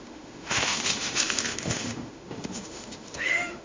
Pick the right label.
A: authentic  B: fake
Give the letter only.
B